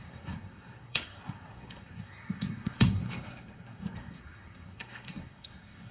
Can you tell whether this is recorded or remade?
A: remade